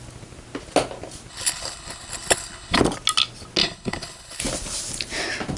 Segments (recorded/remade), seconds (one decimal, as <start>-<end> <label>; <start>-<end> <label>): 0.0-1.3 recorded; 1.3-2.8 remade; 2.8-3.6 recorded; 3.6-4.4 remade; 4.4-5.6 recorded